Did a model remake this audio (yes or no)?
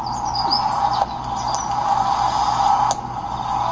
no